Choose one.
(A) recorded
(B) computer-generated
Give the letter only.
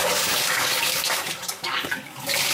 B